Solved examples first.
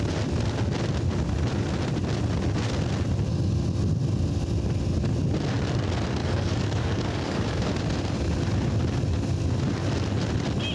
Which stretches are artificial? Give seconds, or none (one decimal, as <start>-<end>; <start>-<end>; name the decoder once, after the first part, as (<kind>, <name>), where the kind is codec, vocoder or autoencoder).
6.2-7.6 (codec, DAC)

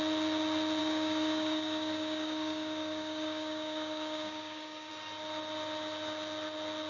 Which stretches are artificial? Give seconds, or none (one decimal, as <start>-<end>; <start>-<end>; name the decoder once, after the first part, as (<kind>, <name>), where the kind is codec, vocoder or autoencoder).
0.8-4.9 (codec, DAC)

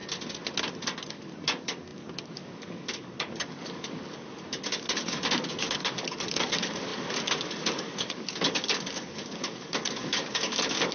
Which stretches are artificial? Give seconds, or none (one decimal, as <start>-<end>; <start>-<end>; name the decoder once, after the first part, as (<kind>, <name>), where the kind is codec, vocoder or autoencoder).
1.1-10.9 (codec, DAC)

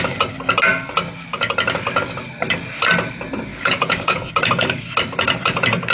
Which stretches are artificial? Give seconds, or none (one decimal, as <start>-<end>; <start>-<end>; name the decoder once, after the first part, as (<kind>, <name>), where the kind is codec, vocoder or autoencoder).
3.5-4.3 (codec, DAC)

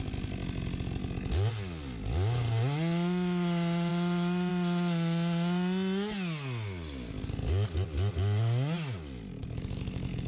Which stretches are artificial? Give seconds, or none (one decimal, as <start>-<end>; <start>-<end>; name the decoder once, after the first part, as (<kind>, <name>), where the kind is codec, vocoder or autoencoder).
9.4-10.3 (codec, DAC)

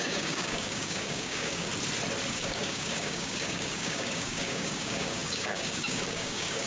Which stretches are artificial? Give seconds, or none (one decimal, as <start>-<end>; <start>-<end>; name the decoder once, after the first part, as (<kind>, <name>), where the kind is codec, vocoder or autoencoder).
0.0-1.7 (codec, DAC); 2.3-6.7

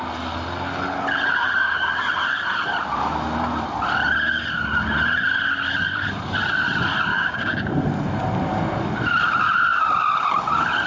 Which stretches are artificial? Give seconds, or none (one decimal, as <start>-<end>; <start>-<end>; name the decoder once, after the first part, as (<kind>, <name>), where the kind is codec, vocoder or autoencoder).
7.1-7.7 (codec, DAC)

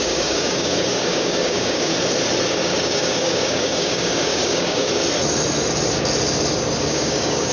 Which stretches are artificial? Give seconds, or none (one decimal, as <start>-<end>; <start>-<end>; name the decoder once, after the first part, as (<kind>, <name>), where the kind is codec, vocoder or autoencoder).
0.0-1.9 (codec, DAC); 2.5-4.9; 6.8-7.5